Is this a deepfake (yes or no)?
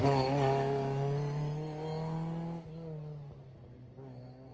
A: no